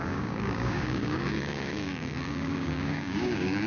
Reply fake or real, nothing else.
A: fake